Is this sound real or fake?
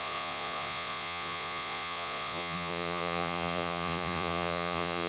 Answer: fake